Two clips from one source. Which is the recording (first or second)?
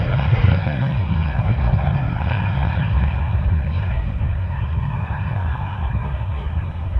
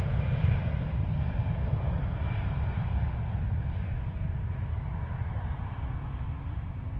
second